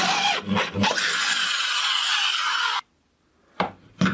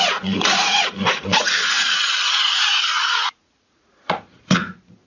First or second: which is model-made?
second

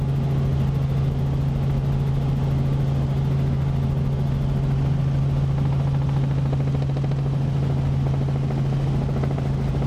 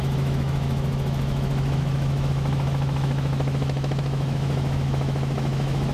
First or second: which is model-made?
second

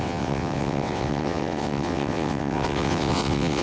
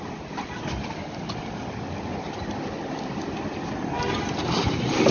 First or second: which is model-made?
first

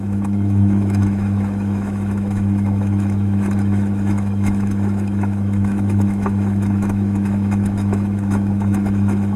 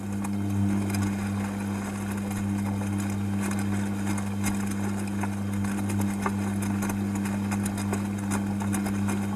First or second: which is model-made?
first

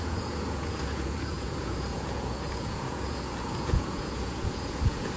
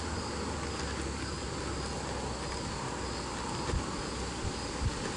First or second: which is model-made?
first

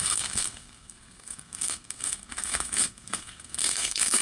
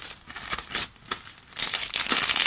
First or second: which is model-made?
first